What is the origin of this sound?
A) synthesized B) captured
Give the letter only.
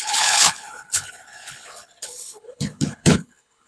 A